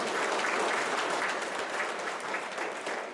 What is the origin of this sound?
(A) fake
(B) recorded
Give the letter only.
A